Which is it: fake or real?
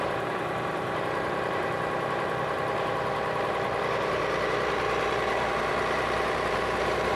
fake